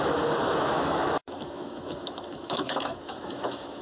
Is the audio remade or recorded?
remade